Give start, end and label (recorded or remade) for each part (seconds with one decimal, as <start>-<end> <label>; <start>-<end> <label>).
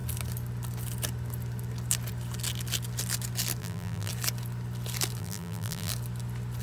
0.0-3.6 recorded; 3.6-4.1 remade; 4.1-5.2 recorded; 5.2-5.9 remade; 5.9-6.6 recorded